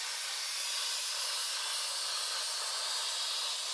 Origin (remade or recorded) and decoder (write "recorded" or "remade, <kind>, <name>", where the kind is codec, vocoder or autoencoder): recorded